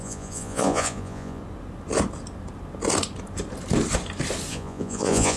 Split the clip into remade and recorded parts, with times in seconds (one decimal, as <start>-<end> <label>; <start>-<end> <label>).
0.0-1.4 remade; 1.4-4.5 recorded; 4.5-5.4 remade